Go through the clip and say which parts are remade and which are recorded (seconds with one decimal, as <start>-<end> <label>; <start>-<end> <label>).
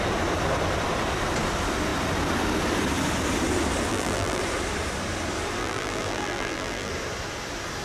0.0-3.9 recorded; 3.9-4.4 remade; 4.4-5.6 recorded; 5.6-6.9 remade; 6.9-7.8 recorded